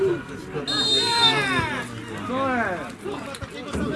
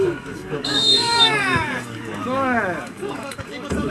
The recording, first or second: first